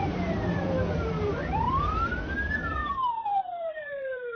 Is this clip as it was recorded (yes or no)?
no